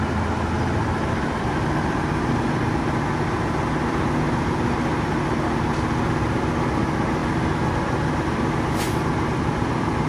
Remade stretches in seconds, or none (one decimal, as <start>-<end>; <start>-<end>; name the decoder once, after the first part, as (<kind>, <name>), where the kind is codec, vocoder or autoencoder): none